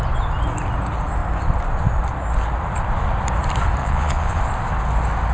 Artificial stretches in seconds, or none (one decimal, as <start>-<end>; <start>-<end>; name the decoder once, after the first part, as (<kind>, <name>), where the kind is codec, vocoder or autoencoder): 3.8-4.4 (vocoder, Vocos)